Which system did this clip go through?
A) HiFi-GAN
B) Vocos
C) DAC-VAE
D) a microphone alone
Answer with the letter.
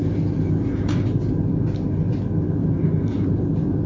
D